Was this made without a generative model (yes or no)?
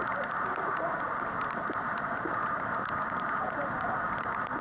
yes